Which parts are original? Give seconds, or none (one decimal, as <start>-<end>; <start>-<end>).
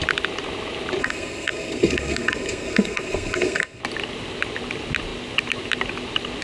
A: 0.0-1.0; 3.8-6.4